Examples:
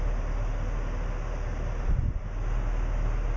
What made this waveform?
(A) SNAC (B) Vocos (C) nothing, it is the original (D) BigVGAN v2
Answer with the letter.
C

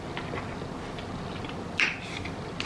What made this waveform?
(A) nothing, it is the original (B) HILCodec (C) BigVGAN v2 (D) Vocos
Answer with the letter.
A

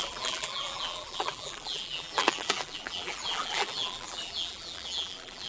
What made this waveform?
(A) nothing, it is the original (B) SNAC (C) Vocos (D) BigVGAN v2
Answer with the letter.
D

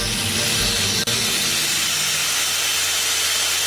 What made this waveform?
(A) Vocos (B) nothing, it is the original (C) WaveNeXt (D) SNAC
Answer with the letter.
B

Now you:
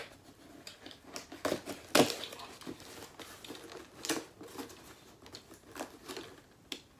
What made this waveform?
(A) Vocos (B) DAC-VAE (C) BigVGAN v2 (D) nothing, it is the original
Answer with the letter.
D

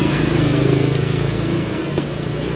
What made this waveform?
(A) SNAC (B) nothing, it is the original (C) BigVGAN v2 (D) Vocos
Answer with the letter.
A